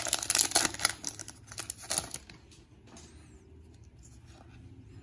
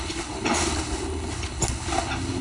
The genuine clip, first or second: first